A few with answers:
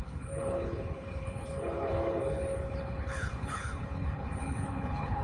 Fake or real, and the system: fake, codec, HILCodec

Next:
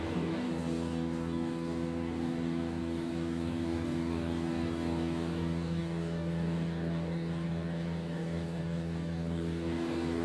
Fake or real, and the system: fake, codec, DAC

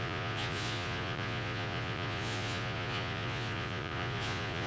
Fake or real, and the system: fake, vocoder, Vocos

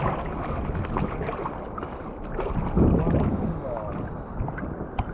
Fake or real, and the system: real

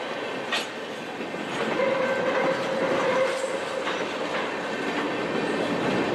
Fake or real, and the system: real